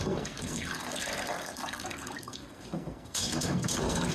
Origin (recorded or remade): remade